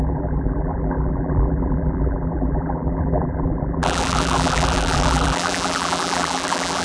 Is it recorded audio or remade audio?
remade